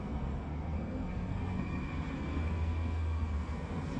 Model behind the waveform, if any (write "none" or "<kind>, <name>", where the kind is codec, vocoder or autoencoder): codec, SNAC